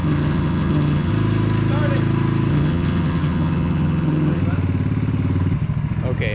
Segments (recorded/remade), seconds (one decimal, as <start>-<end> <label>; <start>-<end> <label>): 0.0-1.1 remade; 1.1-2.5 recorded; 2.5-4.4 remade; 4.4-6.3 recorded